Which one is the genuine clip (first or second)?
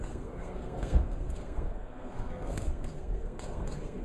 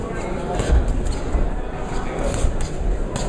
second